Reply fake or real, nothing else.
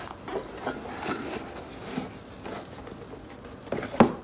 real